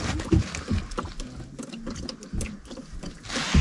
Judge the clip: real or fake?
real